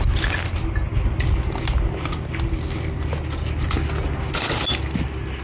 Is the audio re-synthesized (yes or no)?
no